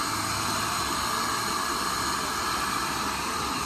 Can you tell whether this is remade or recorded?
recorded